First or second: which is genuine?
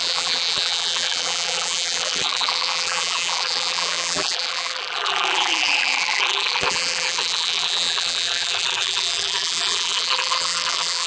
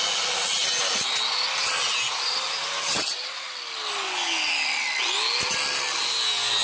second